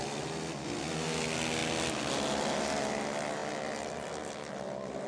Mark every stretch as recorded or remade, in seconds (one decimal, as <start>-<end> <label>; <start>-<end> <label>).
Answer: 0.0-5.1 recorded

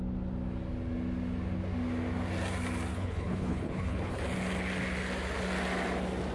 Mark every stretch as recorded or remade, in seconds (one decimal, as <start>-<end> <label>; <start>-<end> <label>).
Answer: 0.0-2.9 recorded; 2.9-4.2 remade; 4.2-6.3 recorded

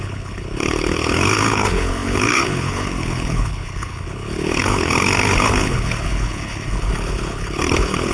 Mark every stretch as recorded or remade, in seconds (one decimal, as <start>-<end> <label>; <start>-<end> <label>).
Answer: 0.0-8.1 remade

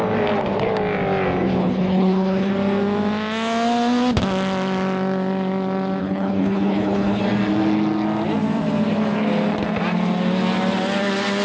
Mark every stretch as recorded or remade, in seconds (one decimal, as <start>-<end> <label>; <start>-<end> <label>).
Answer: 0.0-1.6 recorded; 1.6-2.5 remade; 2.5-6.0 recorded; 6.0-7.2 remade; 7.2-11.4 recorded

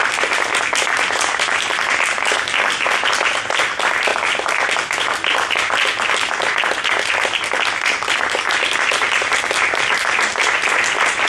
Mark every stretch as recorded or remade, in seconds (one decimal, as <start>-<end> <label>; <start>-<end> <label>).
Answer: 0.0-11.3 recorded

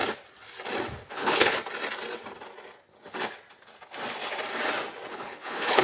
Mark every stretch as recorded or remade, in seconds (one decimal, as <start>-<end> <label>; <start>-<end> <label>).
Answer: 0.0-1.1 recorded; 1.1-1.6 remade; 1.6-5.1 recorded; 5.1-5.8 remade

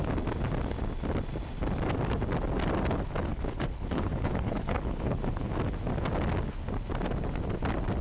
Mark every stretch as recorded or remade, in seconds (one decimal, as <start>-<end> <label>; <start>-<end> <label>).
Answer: 0.0-3.3 recorded; 3.3-5.5 remade; 5.5-8.0 recorded

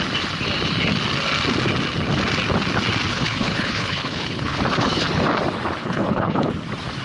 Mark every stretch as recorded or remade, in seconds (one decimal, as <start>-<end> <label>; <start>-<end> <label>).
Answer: 0.0-3.1 recorded; 3.1-4.6 remade; 4.6-5.8 recorded; 5.8-6.5 remade; 6.5-7.0 recorded